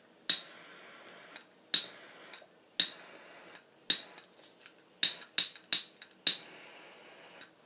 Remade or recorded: recorded